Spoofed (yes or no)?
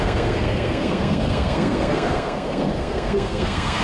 yes